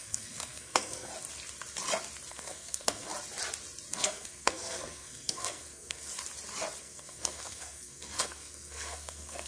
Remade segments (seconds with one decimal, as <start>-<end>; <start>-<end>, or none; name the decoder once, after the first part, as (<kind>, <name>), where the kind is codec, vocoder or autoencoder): 0.0-1.1 (codec, SNAC); 2.3-3.1; 3.9-6.1; 6.8-9.5